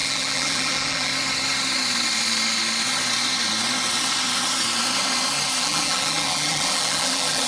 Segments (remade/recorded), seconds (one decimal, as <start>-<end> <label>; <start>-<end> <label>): 0.0-1.1 remade; 1.1-5.6 recorded; 5.6-7.5 remade